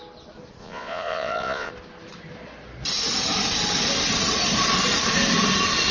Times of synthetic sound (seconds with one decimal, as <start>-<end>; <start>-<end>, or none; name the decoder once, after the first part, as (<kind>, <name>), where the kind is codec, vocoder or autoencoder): 0.6-1.7 (vocoder, Vocos)